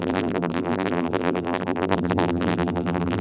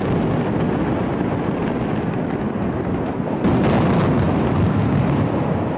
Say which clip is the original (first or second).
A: second